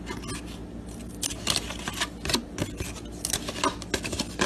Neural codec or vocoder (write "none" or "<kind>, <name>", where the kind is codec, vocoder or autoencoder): none